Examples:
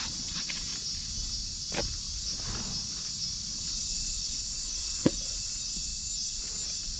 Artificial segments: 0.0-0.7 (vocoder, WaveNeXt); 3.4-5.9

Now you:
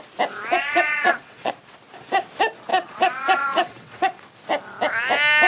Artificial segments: 0.6-1.5 (vocoder, WaveNeXt); 2.7-4.2